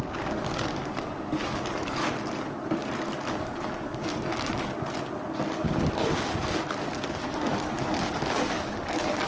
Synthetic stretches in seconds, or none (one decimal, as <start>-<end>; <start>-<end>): 0.0-2.0; 3.3-4.7; 7.1-9.3